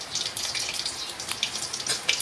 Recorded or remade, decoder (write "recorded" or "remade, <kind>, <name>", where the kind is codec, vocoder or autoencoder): recorded